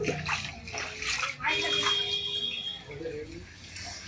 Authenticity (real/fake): real